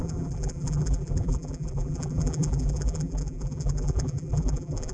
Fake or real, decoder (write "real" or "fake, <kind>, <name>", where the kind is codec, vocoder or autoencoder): fake, vocoder, BigVGAN v2